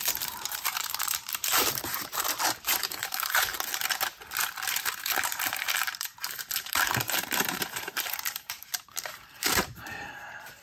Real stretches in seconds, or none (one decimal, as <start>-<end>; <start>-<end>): 3.5-5.0